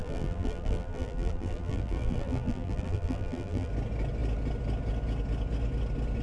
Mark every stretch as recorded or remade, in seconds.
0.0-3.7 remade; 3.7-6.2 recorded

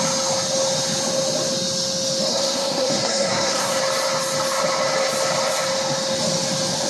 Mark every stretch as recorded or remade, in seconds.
0.0-2.3 recorded; 2.3-3.8 remade; 3.8-6.9 recorded

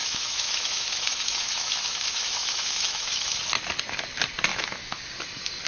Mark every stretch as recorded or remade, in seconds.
0.0-3.4 remade; 3.4-4.5 recorded; 4.5-5.0 remade; 5.0-5.7 recorded